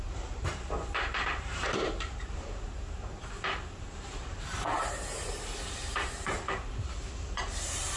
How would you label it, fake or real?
fake